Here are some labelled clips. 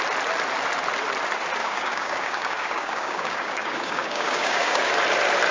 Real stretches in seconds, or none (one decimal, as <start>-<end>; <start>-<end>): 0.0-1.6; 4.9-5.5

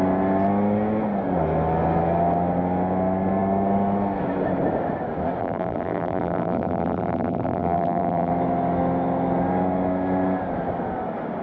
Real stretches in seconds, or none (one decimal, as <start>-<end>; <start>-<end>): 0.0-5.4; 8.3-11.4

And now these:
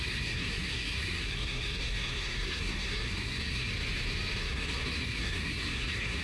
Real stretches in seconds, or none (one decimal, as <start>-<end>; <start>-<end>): 3.7-4.4

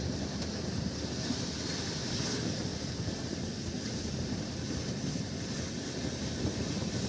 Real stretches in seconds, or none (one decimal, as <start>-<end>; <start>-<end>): 0.0-7.1

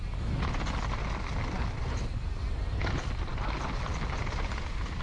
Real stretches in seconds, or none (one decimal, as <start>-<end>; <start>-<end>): 0.0-5.0